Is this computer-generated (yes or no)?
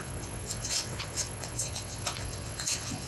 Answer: yes